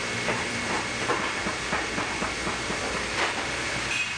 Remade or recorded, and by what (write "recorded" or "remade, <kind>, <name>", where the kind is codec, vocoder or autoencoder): remade, vocoder, BigVGAN v2